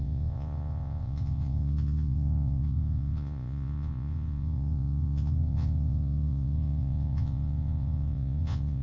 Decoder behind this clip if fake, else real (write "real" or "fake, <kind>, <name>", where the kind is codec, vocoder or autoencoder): fake, vocoder, Vocos